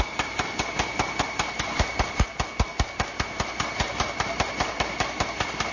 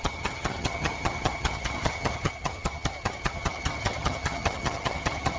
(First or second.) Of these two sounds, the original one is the first